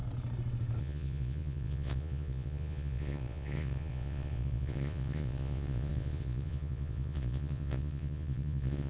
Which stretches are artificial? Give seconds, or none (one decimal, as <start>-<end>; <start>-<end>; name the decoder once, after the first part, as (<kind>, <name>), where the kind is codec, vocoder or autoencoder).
0.8-8.9 (vocoder, Vocos)